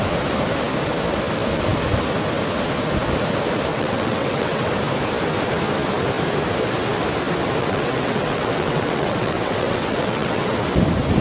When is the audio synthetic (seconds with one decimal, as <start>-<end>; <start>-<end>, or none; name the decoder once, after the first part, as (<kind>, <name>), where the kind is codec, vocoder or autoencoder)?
3.7-4.7 (vocoder, WaveNeXt); 7.6-10.5